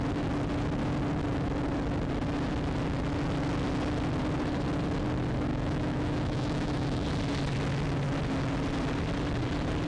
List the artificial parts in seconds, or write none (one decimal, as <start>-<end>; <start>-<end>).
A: 5.5-7.1

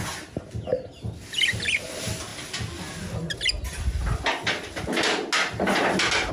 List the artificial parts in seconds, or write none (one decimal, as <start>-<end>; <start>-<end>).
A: none

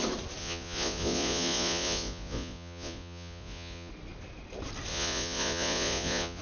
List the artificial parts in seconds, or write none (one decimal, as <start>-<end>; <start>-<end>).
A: 0.4-3.9; 4.9-6.4

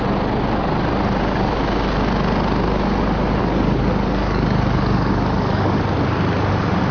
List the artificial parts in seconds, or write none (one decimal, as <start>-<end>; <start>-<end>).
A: 3.4-5.8

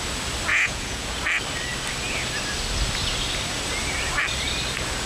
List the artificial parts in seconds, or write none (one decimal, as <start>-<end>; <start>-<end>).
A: 0.5-1.2

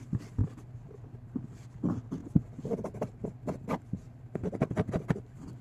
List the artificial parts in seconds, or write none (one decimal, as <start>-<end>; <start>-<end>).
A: none